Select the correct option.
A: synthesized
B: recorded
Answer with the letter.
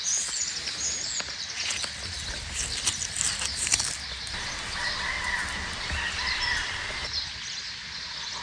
B